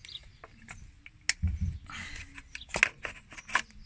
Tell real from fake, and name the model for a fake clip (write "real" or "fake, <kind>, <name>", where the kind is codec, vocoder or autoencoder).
real